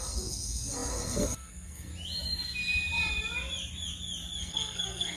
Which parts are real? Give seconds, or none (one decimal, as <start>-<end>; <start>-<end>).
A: 1.9-4.4